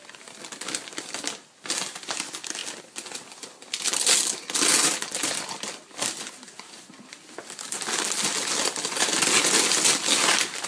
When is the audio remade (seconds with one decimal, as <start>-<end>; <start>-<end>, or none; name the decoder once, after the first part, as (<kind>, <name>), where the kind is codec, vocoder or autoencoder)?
none